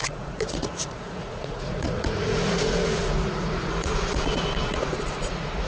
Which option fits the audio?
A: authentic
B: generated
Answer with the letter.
B